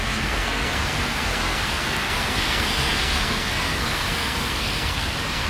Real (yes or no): no